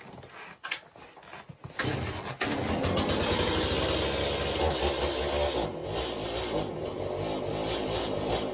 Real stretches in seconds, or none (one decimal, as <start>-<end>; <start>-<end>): 0.0-8.5